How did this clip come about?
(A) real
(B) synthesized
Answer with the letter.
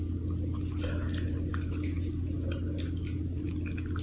A